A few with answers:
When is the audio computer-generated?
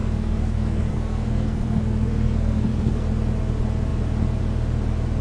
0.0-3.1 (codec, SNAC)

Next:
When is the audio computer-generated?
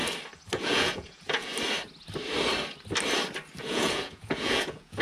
0.6-1.5 (vocoder, Vocos); 3.6-5.0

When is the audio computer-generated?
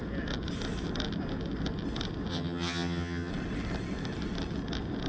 2.3-3.3 (vocoder, HiFi-GAN)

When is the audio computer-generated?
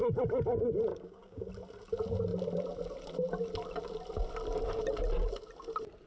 0.9-1.5 (codec, DAC)